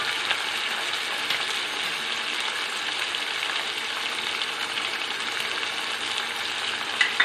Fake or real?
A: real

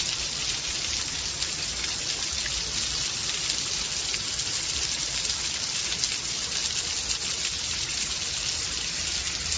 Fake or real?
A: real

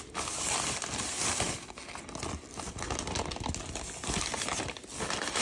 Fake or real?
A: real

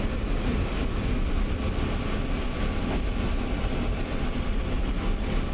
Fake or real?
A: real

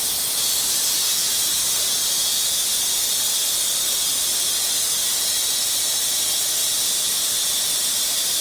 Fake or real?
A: real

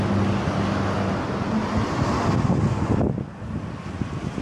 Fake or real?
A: real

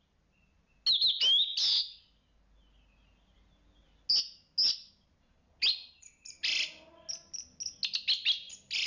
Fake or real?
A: real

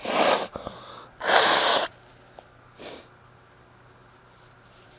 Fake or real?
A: real